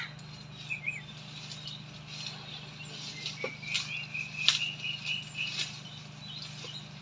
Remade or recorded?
recorded